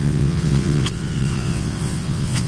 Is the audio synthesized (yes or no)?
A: yes